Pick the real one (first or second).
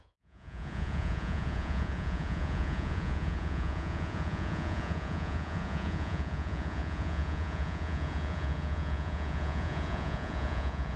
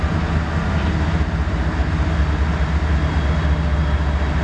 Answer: second